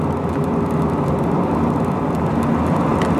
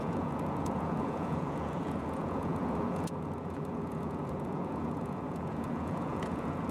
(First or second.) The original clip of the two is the first